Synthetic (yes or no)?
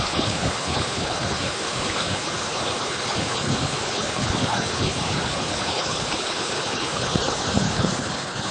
yes